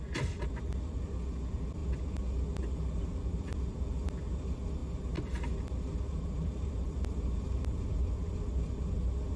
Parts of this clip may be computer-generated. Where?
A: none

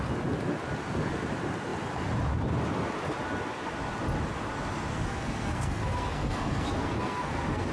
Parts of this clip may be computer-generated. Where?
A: 4.9-7.7 (codec, SNAC)

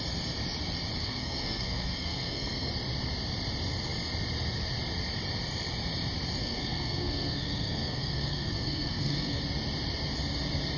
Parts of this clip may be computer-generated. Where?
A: 1.0-2.7 (codec, SNAC); 6.4-9.4

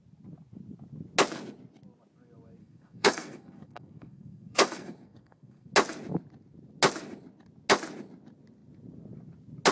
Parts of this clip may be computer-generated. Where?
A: 2.6-5.7 (codec, SNAC)

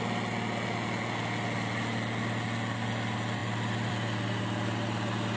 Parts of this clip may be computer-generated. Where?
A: none

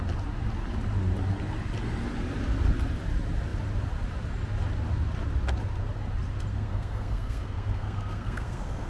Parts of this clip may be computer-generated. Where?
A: 6.5-8.9 (codec, SNAC)

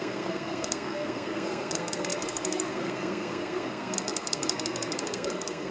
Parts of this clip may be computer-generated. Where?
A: 0.0-5.7 (codec, SNAC)

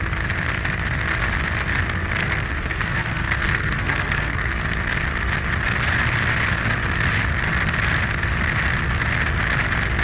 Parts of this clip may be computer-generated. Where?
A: 2.2-4.5 (codec, SNAC)